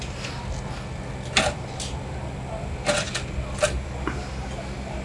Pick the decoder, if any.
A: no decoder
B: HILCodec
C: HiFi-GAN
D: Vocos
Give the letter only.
A